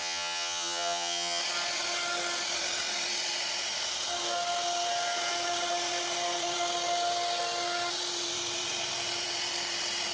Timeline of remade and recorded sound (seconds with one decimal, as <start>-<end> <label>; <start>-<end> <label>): 0.0-1.4 remade; 1.4-10.1 recorded